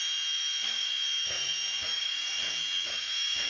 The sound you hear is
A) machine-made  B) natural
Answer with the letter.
A